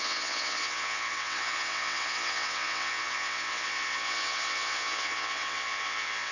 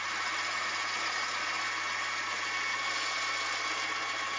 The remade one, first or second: first